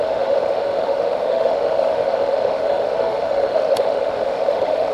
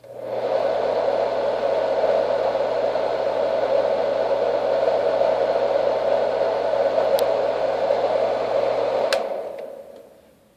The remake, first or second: first